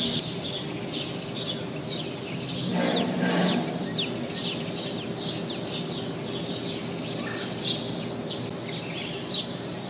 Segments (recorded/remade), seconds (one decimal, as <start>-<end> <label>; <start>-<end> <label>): 0.0-9.9 recorded

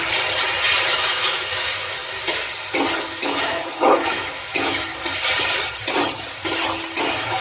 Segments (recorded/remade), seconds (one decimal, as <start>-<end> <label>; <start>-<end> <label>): 0.0-0.9 recorded; 0.9-2.0 remade; 2.0-3.0 recorded; 3.0-4.9 remade; 4.9-7.0 recorded; 7.0-7.4 remade

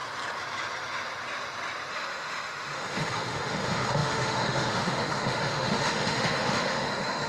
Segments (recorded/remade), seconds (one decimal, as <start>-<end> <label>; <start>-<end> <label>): 0.0-1.9 recorded; 1.9-7.3 remade

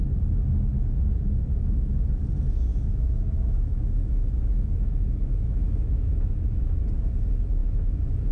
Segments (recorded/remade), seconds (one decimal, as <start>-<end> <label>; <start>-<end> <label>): 0.0-2.7 recorded; 2.7-6.8 remade; 6.8-7.6 recorded; 7.6-8.3 remade